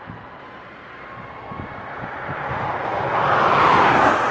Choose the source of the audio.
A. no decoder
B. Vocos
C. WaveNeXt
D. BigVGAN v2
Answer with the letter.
A